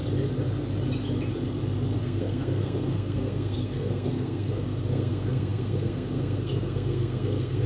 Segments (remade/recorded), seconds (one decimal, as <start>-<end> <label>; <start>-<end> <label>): 0.0-2.0 recorded; 2.0-7.7 remade